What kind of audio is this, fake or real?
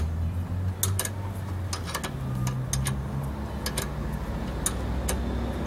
real